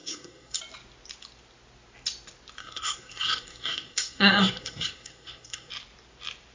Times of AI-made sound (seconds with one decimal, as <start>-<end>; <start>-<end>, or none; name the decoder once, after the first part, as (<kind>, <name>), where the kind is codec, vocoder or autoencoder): 0.0-0.6 (codec, SNAC); 2.6-5.7